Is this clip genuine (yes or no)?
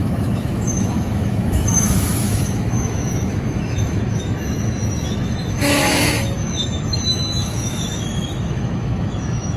no